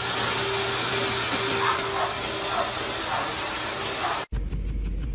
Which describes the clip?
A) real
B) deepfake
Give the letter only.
A